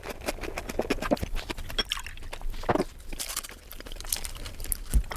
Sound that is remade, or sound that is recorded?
recorded